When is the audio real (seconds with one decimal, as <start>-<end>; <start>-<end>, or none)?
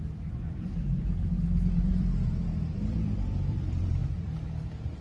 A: none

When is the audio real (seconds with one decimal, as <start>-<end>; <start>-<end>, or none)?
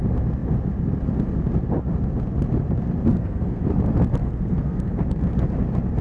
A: 0.0-3.1; 3.6-4.2; 4.9-6.0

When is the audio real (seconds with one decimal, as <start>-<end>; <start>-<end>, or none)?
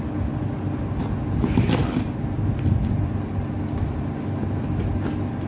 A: 0.0-5.5